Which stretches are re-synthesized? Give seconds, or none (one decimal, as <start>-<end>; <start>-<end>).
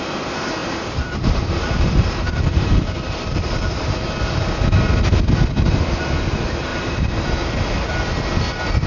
0.6-3.9; 6.7-7.2